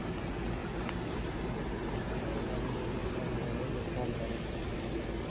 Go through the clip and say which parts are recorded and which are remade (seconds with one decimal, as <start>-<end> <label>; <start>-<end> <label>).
0.0-0.6 recorded; 0.6-1.7 remade; 1.7-3.0 recorded; 3.0-4.3 remade; 4.3-5.3 recorded

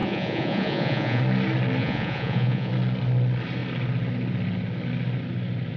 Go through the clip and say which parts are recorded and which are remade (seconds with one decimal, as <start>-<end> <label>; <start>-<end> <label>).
0.0-1.2 remade; 1.2-1.8 recorded; 1.8-2.7 remade; 2.7-5.8 recorded

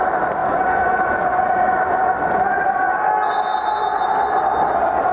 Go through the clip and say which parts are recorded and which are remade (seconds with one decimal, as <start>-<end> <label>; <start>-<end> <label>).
0.0-0.4 recorded; 0.4-1.6 remade; 1.6-5.1 recorded

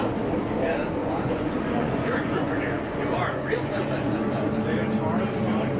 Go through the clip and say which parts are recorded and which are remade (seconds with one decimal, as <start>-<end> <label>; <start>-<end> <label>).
0.0-1.0 recorded; 1.0-4.5 remade; 4.5-5.8 recorded

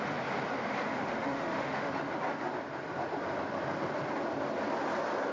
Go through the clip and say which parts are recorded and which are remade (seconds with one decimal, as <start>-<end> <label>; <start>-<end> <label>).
0.0-0.9 recorded; 0.9-1.9 remade; 1.9-5.3 recorded